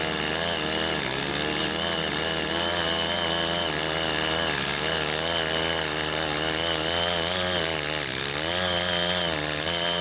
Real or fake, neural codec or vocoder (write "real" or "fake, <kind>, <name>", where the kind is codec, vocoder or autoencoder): real